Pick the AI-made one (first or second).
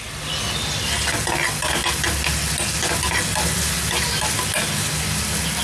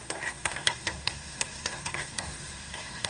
second